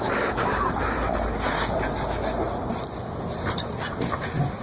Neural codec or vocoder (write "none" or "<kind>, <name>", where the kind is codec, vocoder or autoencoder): none